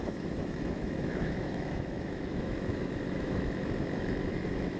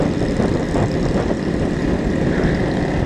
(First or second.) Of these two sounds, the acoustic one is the second